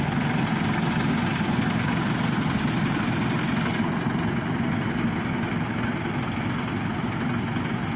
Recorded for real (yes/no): yes